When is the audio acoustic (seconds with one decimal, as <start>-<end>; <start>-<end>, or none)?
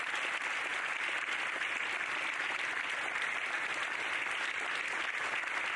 0.0-5.8